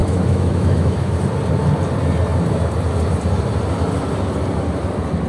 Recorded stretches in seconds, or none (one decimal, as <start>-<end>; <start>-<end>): 1.2-5.3